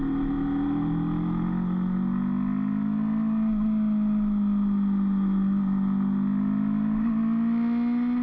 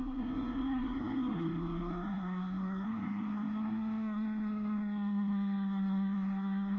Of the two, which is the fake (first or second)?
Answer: second